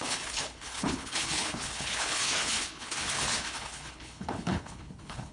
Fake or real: fake